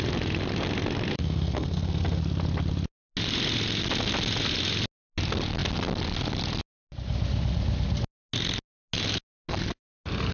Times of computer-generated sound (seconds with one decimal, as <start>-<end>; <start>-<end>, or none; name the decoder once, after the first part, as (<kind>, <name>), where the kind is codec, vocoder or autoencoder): 1.1-2.2 (codec, SNAC)